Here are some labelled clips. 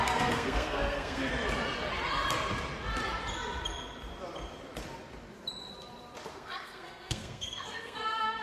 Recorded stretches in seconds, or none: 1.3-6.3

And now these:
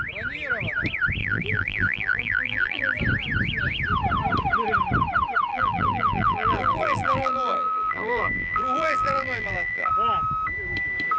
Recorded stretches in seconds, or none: 0.0-1.2; 3.0-5.5; 9.9-11.2

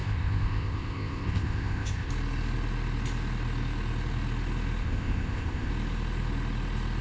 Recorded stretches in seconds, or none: 2.1-4.8; 5.7-7.0

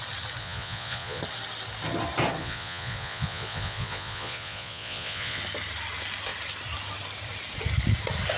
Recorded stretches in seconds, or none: 0.0-0.4; 1.2-2.4; 5.4-8.4